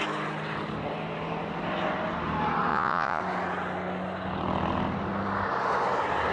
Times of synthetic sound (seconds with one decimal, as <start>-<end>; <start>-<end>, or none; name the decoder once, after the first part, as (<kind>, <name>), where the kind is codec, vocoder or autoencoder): 2.7-3.2 (vocoder, Vocos)

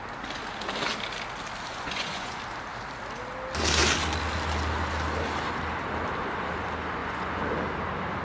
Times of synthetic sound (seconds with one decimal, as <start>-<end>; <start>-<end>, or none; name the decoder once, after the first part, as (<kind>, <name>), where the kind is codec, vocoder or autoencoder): 1.7-2.4 (vocoder, Vocos); 7.0-7.5

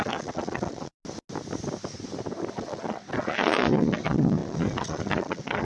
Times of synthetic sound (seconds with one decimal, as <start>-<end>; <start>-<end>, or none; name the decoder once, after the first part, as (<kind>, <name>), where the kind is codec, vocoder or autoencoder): 0.0-0.9 (vocoder, Vocos); 2.5-5.6

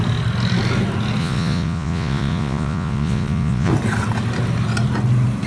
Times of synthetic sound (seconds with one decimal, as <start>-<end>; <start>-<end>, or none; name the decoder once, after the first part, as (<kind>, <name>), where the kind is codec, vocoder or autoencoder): 1.2-3.7 (vocoder, Vocos)

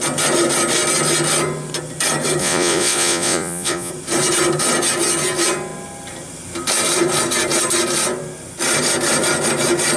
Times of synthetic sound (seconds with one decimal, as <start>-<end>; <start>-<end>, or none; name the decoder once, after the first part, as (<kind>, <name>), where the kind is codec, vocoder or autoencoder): 2.4-3.9 (vocoder, Vocos)